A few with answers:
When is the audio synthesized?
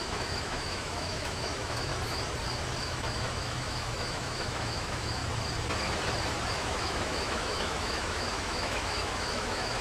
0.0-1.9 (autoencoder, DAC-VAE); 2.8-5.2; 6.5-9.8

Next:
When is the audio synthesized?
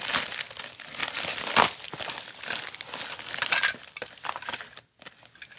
none